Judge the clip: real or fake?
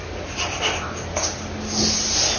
real